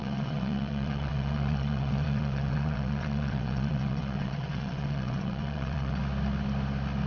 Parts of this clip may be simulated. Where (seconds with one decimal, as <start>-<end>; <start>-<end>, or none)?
0.0-6.0